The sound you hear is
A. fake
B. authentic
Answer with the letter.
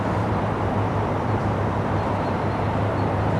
A